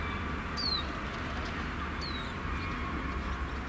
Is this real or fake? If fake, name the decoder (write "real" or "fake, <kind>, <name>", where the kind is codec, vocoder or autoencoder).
real